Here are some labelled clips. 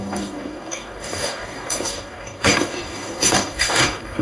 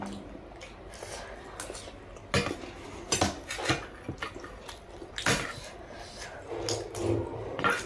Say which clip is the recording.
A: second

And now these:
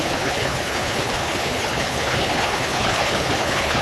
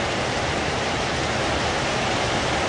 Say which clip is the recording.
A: second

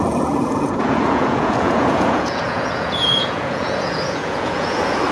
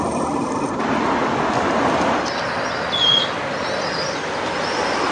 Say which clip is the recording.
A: second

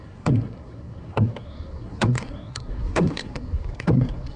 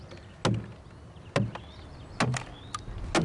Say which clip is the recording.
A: second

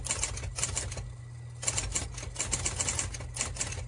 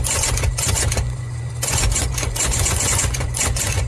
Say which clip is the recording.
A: first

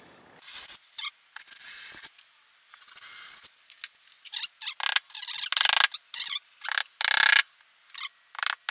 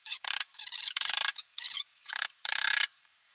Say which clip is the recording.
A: first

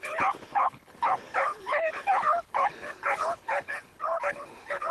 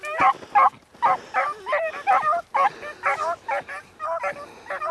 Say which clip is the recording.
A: second